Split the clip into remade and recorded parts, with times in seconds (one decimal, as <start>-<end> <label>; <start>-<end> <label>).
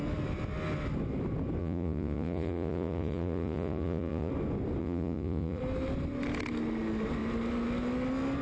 0.0-1.6 recorded; 1.6-4.3 remade; 4.3-4.8 recorded; 4.8-5.6 remade; 5.6-8.4 recorded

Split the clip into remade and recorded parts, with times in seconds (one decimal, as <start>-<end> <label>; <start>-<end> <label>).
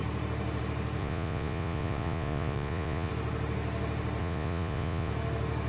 0.0-1.0 recorded; 1.0-3.1 remade; 3.1-4.2 recorded; 4.2-5.1 remade; 5.1-5.7 recorded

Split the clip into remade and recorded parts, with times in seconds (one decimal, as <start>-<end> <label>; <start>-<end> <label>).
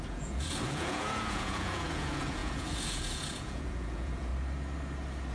0.0-4.3 remade; 4.3-5.3 recorded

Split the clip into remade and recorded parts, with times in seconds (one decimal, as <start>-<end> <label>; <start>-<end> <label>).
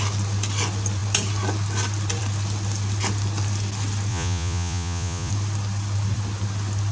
0.0-4.1 recorded; 4.1-5.3 remade; 5.3-6.9 recorded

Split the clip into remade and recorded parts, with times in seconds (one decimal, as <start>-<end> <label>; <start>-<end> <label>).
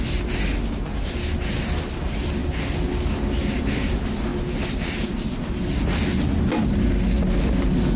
0.0-8.0 recorded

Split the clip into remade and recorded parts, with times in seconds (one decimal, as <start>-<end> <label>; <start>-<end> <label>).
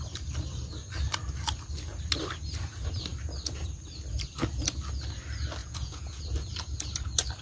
0.0-5.6 recorded; 5.6-6.2 remade; 6.2-7.4 recorded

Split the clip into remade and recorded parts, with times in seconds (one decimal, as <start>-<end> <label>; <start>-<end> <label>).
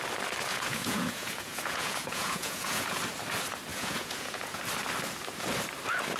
0.0-0.5 recorded; 0.5-3.0 remade; 3.0-3.7 recorded; 3.7-4.6 remade; 4.6-6.2 recorded